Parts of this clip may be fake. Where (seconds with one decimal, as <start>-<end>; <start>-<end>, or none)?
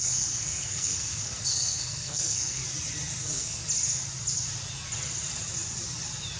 0.0-2.6; 3.2-3.6